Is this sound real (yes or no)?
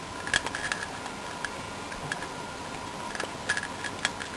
yes